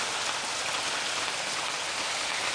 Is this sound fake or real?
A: real